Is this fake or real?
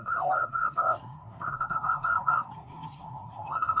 fake